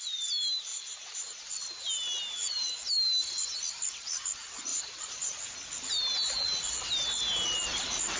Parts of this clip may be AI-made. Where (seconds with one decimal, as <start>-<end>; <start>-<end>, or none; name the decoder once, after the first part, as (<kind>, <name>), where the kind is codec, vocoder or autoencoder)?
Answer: 0.7-1.5 (vocoder, Vocos); 4.7-5.4